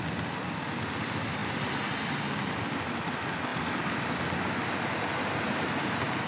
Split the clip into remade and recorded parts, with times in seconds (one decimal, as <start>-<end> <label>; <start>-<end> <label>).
0.0-6.3 recorded